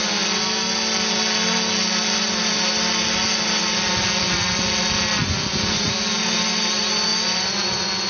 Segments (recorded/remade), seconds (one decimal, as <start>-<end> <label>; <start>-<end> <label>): 0.0-8.1 recorded